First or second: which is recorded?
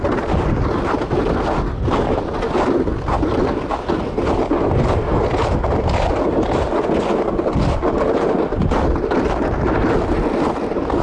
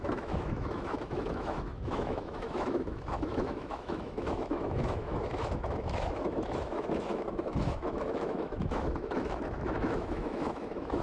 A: first